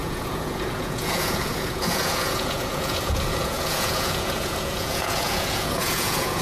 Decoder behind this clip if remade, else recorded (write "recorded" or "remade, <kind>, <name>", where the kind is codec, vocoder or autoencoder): remade, vocoder, Vocos